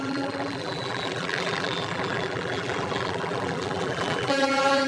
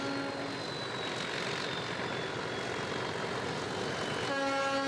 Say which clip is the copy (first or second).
first